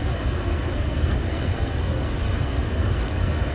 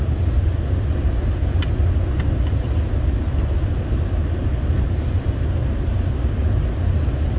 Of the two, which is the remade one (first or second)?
first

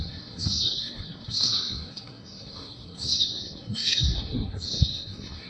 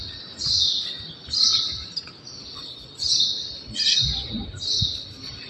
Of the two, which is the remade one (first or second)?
first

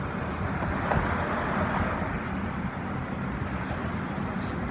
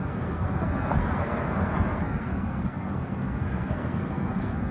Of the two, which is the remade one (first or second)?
second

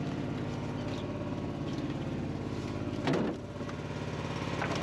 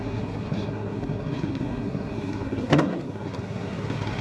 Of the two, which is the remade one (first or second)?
second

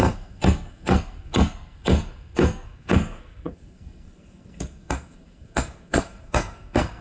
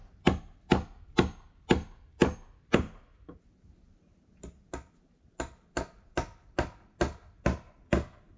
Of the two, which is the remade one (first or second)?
first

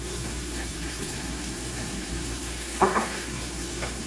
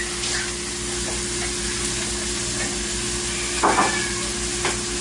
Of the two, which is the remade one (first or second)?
first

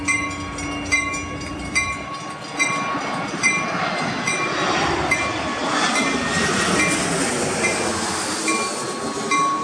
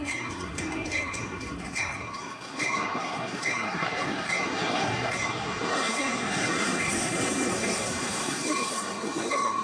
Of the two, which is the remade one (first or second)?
second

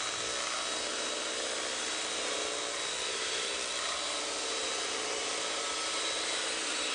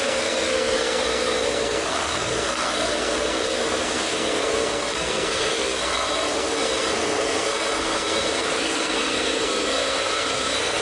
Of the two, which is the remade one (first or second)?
second